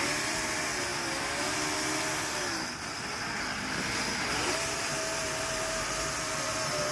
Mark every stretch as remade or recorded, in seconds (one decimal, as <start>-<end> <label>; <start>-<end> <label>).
0.0-6.9 recorded